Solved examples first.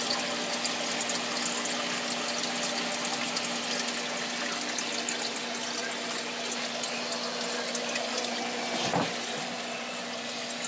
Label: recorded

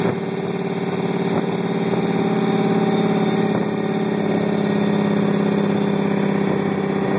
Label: recorded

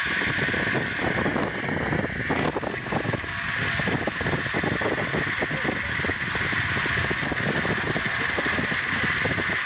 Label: recorded